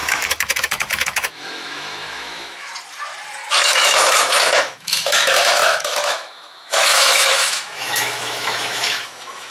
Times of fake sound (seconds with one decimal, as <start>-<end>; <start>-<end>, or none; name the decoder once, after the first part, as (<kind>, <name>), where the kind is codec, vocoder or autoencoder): 0.0-2.7 (autoencoder, DAC-VAE); 3.6-9.5